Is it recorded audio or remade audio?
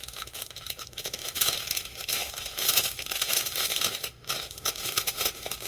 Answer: remade